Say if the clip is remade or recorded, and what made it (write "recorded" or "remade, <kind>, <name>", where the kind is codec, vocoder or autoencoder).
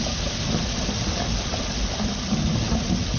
recorded